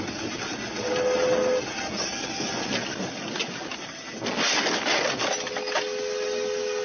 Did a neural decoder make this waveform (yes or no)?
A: no